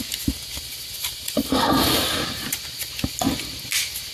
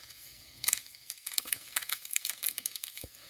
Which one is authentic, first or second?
first